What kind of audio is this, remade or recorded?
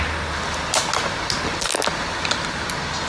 recorded